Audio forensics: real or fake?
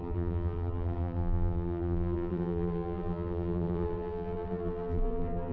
fake